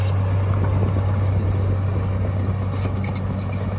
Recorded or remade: recorded